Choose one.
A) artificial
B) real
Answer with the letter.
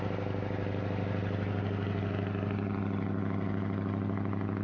B